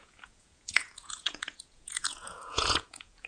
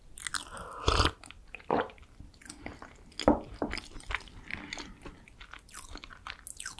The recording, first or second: second